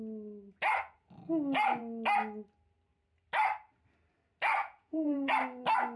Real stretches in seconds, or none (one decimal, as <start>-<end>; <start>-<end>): 0.0-4.6; 5.3-6.0